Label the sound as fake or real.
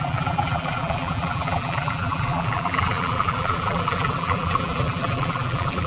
fake